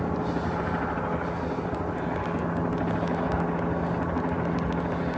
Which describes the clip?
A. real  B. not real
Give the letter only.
A